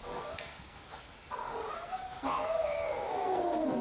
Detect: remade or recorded remade